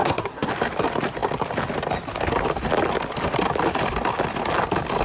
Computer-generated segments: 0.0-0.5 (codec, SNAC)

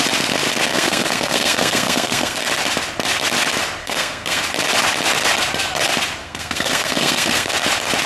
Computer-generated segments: 0.7-2.4 (codec, SNAC); 3.8-4.4; 6.2-7.5

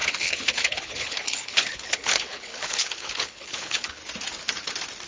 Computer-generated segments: 0.0-4.0 (codec, HILCodec)

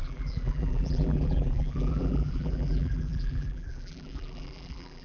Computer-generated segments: 0.0-5.0 (vocoder, BigVGAN v2)

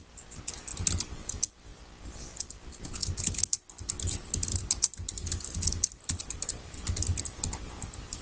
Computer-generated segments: none